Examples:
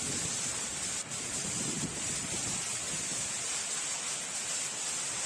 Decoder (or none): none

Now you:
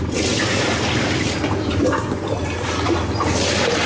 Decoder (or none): none